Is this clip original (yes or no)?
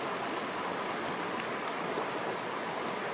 yes